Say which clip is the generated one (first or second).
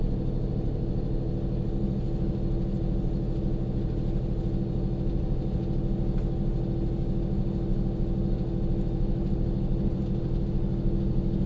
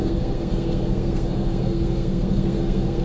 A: second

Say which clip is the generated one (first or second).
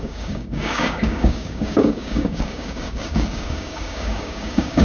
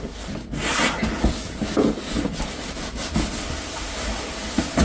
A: first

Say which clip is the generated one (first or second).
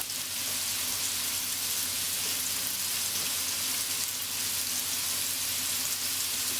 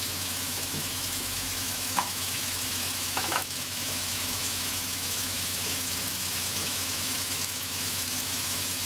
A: second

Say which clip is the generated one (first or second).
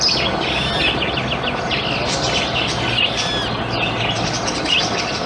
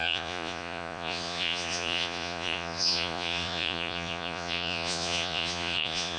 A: second